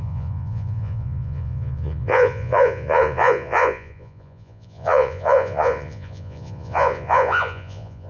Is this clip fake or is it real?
fake